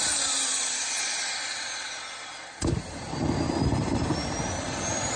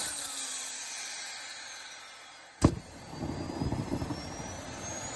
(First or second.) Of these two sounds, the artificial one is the first